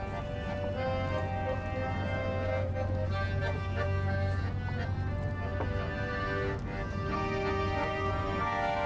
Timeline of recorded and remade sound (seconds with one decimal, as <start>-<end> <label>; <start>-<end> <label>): 0.0-2.2 recorded; 2.2-2.7 remade; 2.7-3.4 recorded; 3.4-4.4 remade; 4.4-8.9 recorded